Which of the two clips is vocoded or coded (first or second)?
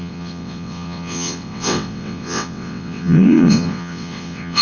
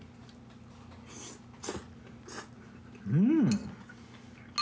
first